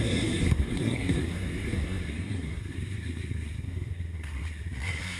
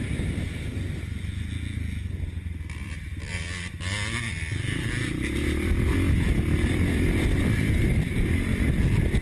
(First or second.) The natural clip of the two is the second